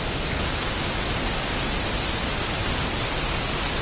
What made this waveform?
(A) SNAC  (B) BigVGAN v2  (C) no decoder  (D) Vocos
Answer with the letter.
C